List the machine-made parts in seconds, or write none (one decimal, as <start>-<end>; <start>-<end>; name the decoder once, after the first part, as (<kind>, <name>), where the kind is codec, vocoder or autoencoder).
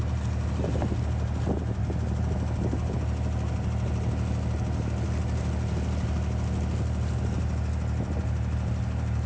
none